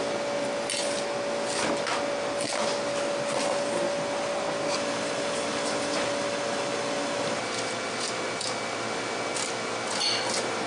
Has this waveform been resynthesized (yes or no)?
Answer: no